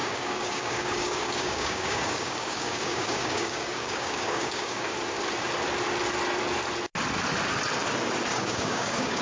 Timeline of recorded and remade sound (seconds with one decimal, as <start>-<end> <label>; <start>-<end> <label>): 0.0-4.9 remade; 4.9-8.3 recorded; 8.3-9.2 remade